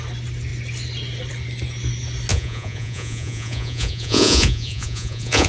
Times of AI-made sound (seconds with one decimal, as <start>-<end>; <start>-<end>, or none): 2.3-5.5